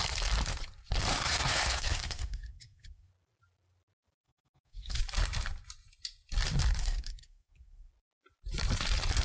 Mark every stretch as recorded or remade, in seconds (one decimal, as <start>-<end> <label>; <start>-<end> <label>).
0.0-1.1 recorded; 1.1-3.1 remade; 3.1-4.2 recorded; 4.2-5.0 remade; 5.0-6.8 recorded; 6.8-7.9 remade; 7.9-9.2 recorded